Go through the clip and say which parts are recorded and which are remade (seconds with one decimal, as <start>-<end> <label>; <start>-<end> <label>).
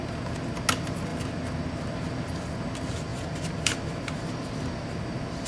0.0-3.1 recorded; 3.1-4.4 remade; 4.4-5.5 recorded